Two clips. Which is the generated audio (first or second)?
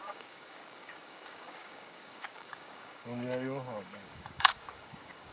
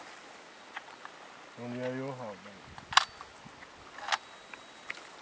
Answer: first